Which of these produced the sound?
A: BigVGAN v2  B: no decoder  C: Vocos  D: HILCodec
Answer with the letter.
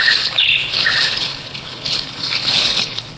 D